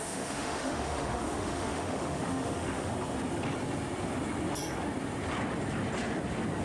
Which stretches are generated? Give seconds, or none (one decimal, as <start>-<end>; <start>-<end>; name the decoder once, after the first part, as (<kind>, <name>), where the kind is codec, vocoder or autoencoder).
0.0-2.9 (autoencoder, DAC-VAE)